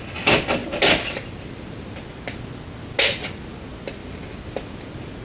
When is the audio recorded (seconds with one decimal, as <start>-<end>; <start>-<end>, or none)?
0.0-0.6; 2.4-4.0